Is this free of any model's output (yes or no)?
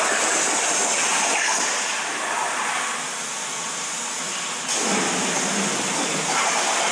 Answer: yes